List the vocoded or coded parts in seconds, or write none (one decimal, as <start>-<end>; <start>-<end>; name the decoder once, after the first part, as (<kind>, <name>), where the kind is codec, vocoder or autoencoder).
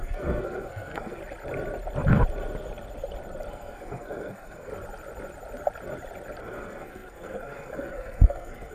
0.0-1.2 (codec, SNAC); 3.5-4.7; 6.4-8.7